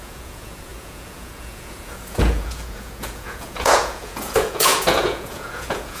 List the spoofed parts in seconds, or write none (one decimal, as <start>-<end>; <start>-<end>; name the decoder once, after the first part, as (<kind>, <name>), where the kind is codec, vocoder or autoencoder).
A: 0.0-6.0 (vocoder, Vocos)